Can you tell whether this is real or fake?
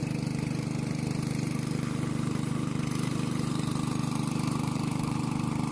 fake